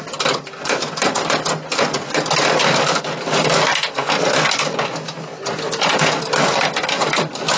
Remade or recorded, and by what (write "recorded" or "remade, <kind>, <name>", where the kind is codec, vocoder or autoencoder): recorded